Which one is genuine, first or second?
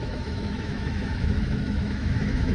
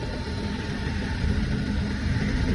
second